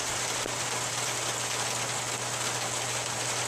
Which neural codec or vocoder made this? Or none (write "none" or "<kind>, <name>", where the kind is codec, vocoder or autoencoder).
none